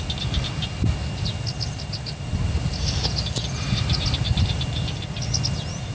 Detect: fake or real real